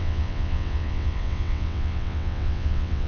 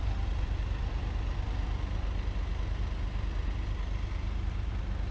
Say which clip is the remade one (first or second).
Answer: first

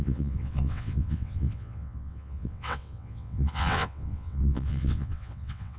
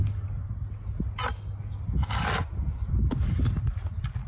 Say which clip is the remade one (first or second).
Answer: first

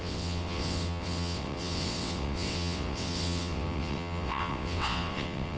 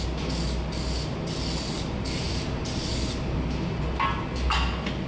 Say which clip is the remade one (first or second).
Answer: first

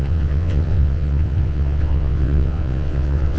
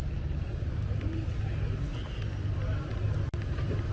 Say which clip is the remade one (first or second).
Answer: first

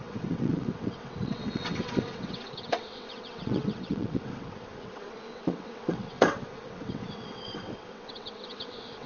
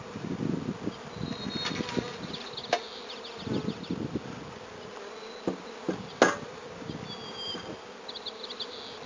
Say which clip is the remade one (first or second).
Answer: first